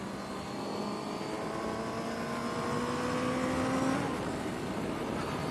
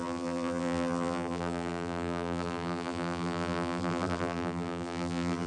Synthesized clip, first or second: second